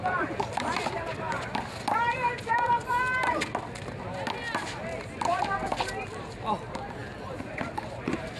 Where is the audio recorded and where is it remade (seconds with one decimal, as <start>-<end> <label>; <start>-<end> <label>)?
0.0-8.4 recorded